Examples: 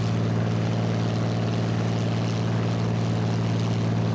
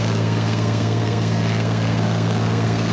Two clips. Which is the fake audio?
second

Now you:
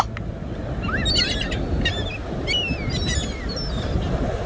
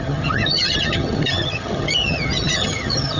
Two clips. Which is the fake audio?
second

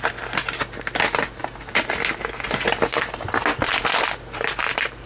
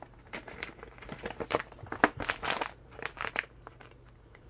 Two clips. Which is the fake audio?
second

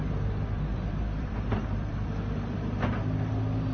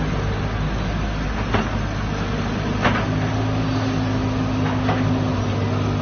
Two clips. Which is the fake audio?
first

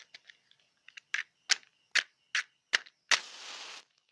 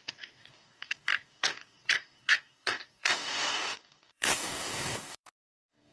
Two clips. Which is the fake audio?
second